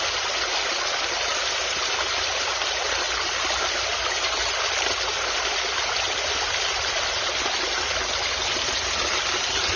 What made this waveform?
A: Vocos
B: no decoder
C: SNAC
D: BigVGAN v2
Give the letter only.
B